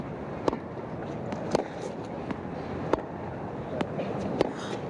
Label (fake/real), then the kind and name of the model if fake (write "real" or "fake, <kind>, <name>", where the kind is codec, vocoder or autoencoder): real